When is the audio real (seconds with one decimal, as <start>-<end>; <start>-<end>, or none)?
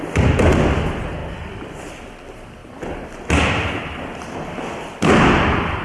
0.0-5.8